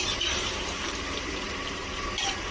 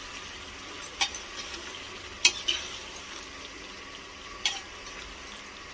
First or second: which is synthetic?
first